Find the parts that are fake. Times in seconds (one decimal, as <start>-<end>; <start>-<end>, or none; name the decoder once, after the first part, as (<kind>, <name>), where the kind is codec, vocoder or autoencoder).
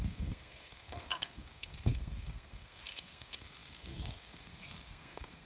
0.0-5.5 (codec, SNAC)